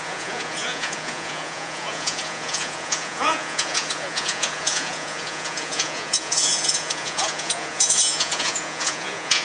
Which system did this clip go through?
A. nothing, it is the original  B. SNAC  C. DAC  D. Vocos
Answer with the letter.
D